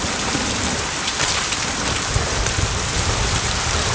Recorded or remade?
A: remade